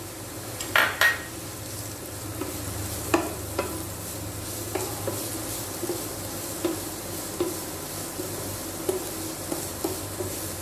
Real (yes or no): yes